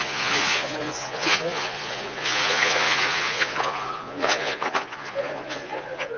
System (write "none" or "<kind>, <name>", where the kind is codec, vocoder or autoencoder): vocoder, Vocos